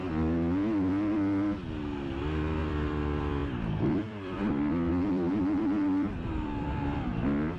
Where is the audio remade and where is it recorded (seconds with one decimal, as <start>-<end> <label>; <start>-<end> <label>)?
0.0-2.6 recorded; 2.6-7.1 remade; 7.1-7.6 recorded

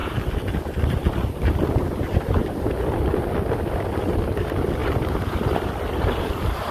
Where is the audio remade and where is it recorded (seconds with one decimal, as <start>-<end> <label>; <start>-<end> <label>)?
0.0-1.1 remade; 1.1-2.4 recorded; 2.4-3.2 remade; 3.2-6.7 recorded

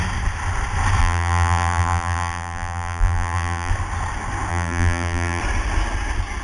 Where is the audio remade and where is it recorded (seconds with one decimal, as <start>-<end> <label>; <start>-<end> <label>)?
0.0-1.0 recorded; 1.0-3.7 remade; 3.7-4.5 recorded; 4.5-5.4 remade; 5.4-6.4 recorded

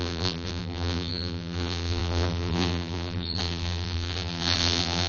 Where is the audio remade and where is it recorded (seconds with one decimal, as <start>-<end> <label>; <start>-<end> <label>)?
0.0-5.1 remade